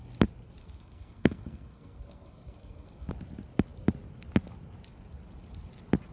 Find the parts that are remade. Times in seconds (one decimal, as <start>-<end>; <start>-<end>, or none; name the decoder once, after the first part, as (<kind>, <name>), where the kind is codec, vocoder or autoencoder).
0.6-3.1 (codec, SNAC)